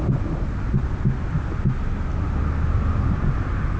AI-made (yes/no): no